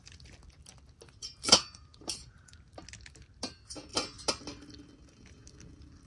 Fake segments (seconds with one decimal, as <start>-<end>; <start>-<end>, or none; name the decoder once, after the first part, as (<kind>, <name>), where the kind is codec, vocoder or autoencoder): 1.2-2.7 (vocoder, BigVGAN v2)